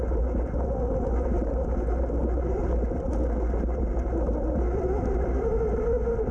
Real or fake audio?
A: real